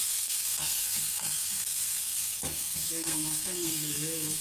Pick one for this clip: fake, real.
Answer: fake